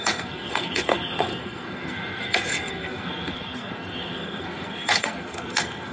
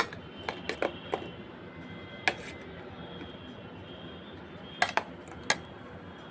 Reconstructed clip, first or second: first